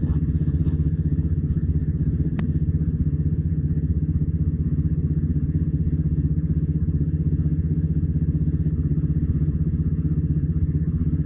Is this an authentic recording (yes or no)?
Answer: no